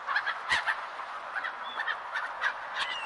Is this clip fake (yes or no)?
yes